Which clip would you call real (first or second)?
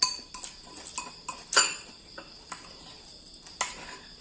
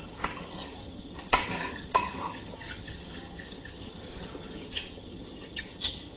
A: first